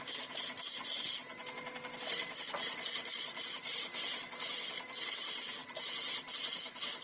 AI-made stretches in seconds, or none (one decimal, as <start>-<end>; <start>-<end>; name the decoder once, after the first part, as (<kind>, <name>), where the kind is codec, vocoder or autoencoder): none